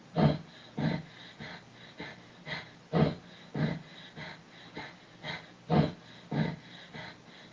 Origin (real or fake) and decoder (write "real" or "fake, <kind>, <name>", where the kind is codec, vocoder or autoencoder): real